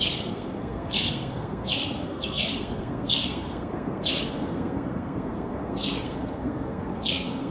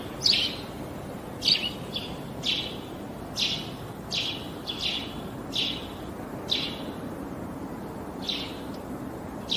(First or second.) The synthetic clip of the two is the first